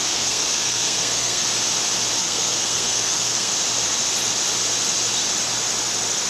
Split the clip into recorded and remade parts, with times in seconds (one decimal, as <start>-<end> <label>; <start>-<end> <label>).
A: 0.0-1.4 remade; 1.4-2.2 recorded; 2.2-3.5 remade; 3.5-6.3 recorded